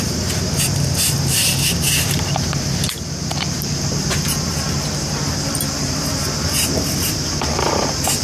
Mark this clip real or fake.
fake